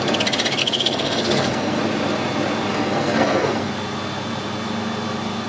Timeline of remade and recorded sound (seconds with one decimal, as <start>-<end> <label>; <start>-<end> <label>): 0.0-0.6 recorded; 0.6-1.8 remade; 1.8-2.7 recorded; 2.7-3.7 remade; 3.7-5.5 recorded